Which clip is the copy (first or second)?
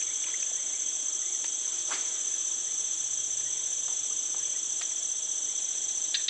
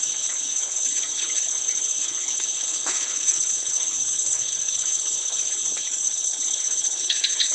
second